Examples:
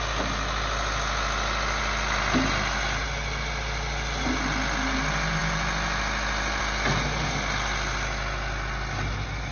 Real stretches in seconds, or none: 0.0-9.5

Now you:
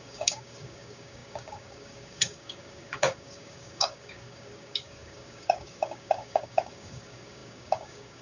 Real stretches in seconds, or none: none

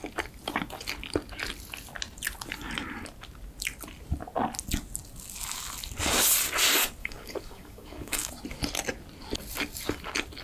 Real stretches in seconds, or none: 0.0-7.0; 8.3-10.4

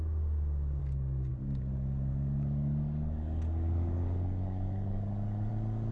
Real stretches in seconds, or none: 0.0-0.8; 1.3-2.1; 5.5-5.9

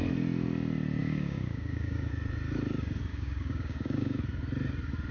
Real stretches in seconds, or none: 0.0-1.0; 2.1-3.1; 4.2-5.1

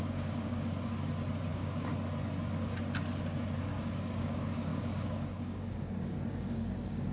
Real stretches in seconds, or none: 0.9-1.5; 1.9-3.6